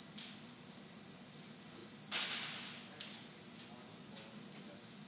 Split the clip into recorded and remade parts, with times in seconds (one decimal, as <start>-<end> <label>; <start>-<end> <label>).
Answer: 0.0-5.1 recorded